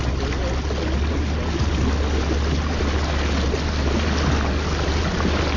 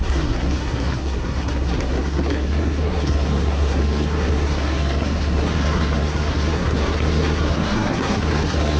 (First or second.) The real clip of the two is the first